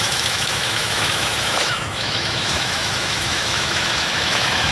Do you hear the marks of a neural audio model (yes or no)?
yes